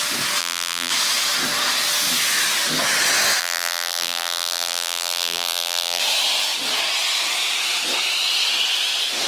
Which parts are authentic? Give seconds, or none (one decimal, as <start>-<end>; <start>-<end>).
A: 0.0-0.4; 0.9-3.4; 6.0-9.3